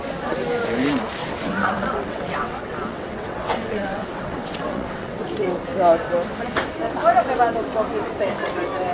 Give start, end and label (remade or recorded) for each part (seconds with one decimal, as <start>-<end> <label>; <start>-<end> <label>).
0.0-1.2 recorded; 1.2-5.2 remade; 5.2-8.9 recorded